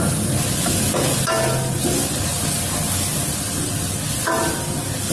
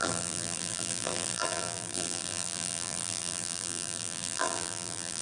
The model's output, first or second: second